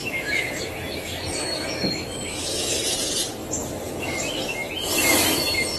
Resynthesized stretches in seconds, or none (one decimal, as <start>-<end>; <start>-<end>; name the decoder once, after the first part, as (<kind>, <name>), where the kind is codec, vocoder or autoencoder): 0.0-2.8 (autoencoder, DAC-VAE)